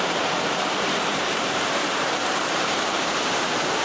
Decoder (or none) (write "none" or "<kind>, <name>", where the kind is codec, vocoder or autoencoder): vocoder, BigVGAN v2